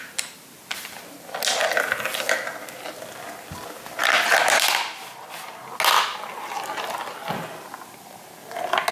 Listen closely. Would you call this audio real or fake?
real